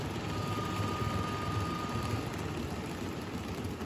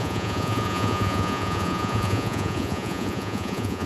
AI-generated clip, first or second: second